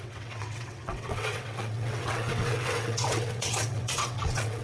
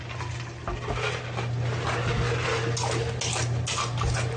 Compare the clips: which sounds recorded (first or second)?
second